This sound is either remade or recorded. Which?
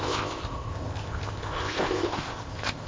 remade